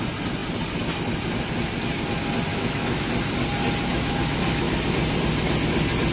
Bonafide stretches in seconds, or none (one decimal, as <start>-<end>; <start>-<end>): 0.0-2.5; 3.1-3.9; 4.7-6.1